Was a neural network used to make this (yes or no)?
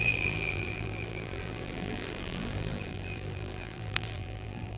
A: yes